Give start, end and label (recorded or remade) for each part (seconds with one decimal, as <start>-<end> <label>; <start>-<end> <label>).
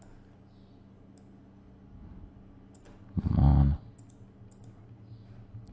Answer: 0.0-5.7 recorded